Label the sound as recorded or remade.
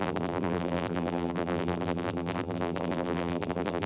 remade